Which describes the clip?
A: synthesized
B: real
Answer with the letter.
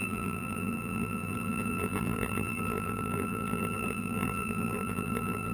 A